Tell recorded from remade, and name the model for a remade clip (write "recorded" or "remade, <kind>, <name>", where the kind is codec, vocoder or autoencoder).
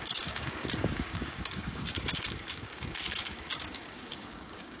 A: remade, codec, DAC